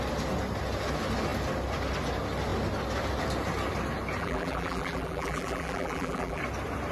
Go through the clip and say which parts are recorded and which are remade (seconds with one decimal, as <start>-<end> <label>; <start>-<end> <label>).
0.0-4.2 recorded; 4.2-6.4 remade; 6.4-6.9 recorded